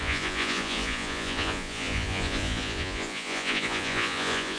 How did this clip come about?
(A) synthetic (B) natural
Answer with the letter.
A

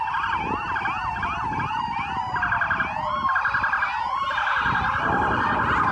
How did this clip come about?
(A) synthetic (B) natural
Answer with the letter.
B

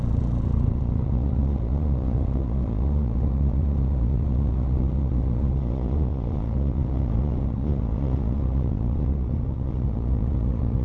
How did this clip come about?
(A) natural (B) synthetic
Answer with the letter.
B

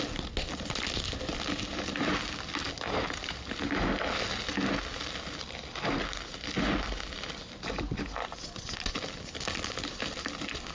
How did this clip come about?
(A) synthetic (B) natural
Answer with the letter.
B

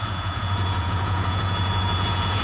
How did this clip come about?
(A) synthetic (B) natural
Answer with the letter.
A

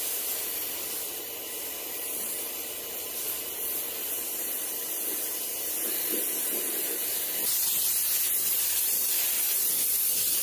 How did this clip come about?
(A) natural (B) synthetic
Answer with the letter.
A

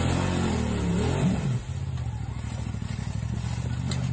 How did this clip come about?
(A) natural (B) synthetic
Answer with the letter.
A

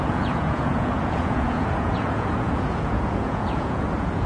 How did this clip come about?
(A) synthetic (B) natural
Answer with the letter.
A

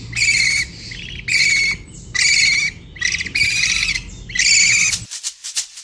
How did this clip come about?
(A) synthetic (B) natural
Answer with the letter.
B